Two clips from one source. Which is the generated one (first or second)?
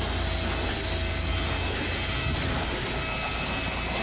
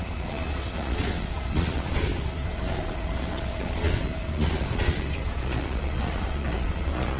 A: second